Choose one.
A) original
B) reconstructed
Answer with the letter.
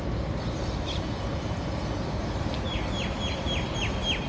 A